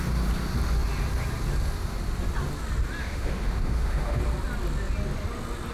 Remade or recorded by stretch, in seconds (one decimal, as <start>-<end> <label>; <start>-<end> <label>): 0.0-3.0 recorded; 3.0-4.2 remade; 4.2-5.7 recorded

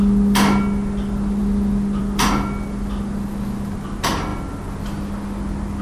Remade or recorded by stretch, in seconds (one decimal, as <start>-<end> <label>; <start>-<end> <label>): 0.0-5.8 recorded

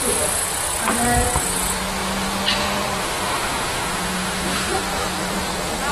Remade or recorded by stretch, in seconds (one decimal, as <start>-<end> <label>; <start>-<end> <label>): 0.0-3.0 recorded; 3.0-4.8 remade; 4.8-5.9 recorded

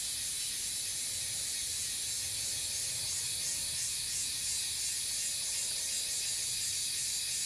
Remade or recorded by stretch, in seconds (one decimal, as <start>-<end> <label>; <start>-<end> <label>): 0.0-7.5 recorded

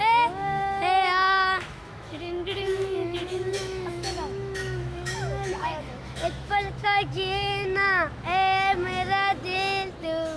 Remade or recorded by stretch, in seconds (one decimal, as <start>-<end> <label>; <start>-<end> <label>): 0.0-9.3 remade; 9.3-10.0 recorded; 10.0-10.4 remade

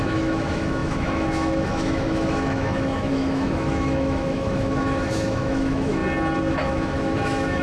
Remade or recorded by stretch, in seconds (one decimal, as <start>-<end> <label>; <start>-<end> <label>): 0.0-6.0 remade; 6.0-6.5 recorded; 6.5-7.6 remade

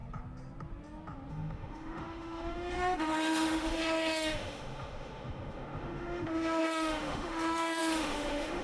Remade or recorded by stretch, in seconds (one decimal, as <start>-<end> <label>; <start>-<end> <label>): 0.0-1.3 recorded; 1.3-8.6 remade